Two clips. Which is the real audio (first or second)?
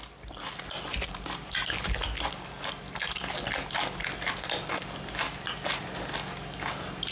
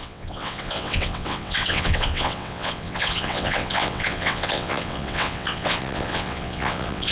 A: first